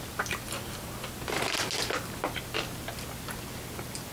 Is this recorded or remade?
recorded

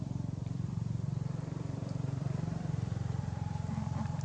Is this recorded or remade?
remade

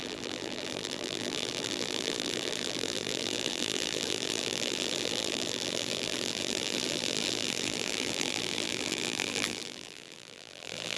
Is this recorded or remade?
remade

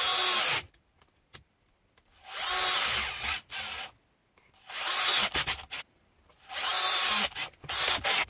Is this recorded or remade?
recorded